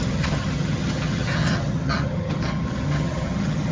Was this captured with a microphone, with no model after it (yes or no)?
no